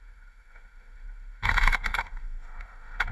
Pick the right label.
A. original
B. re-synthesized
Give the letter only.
B